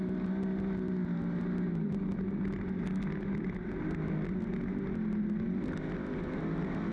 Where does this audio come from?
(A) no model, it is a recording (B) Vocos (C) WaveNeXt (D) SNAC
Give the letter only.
A